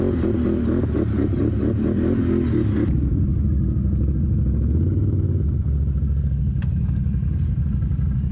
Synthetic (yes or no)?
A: no